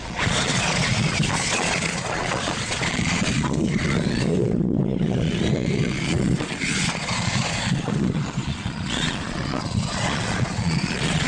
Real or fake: fake